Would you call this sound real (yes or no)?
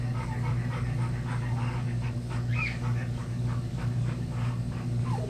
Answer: no